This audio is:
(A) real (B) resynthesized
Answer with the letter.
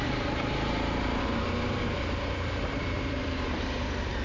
B